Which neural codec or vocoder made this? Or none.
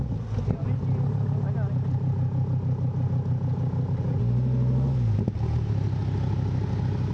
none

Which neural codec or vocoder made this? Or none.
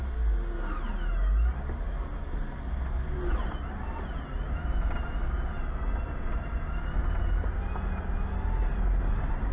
none